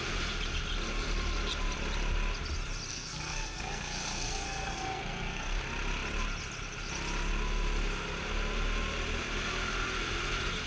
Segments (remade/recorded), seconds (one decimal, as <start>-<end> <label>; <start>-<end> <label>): 0.0-2.9 recorded; 2.9-5.6 remade; 5.6-10.7 recorded